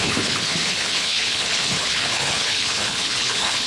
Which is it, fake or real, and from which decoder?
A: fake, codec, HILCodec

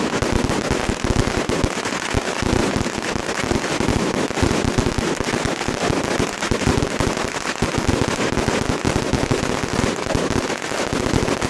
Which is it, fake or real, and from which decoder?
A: real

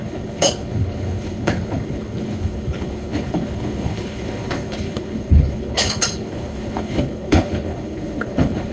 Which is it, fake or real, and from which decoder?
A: fake, codec, HILCodec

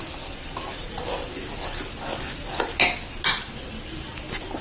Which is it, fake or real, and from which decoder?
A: real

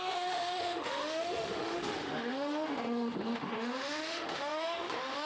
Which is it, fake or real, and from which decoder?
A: fake, autoencoder, DAC-VAE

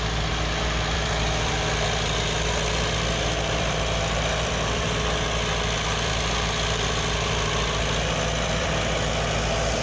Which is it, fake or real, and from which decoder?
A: fake, vocoder, BigVGAN v2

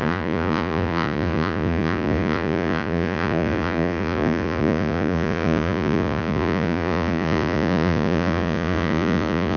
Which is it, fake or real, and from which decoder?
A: fake, vocoder, Vocos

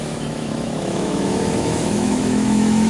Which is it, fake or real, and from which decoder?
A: fake, autoencoder, DAC-VAE